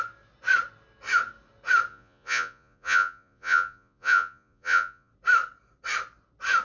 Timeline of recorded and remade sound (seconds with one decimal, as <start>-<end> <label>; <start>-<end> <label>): 0.0-1.9 recorded; 1.9-5.1 remade; 5.1-6.6 recorded